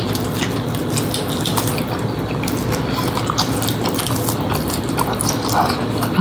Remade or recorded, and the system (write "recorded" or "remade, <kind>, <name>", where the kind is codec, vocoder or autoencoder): recorded